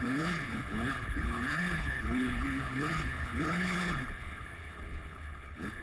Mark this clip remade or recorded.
remade